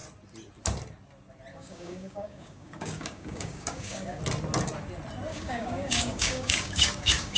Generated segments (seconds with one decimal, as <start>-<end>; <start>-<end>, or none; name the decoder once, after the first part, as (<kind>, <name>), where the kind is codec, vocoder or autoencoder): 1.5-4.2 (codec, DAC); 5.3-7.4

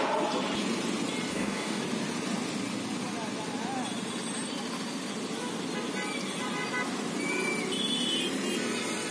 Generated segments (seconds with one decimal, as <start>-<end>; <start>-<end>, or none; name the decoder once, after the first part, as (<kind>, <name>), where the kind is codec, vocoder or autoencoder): 1.3-1.8 (codec, DAC)

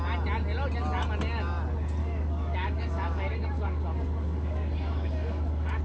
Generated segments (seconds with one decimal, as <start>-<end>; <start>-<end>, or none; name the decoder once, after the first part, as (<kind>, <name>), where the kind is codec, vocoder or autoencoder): 2.0-5.8 (codec, DAC)

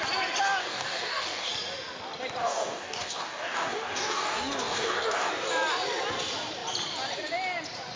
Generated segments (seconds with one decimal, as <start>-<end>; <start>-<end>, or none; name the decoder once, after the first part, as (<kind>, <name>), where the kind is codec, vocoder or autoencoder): 0.6-1.5 (codec, DAC); 2.4-5.3

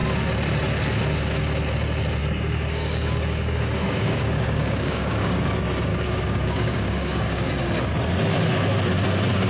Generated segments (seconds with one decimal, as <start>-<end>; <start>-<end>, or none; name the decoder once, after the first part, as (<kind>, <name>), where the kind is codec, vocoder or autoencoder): 2.2-5.5 (codec, DAC); 5.9-7.5